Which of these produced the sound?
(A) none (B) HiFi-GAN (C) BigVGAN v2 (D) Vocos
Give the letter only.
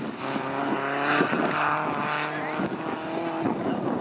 A